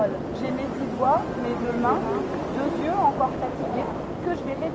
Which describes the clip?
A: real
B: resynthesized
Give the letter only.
A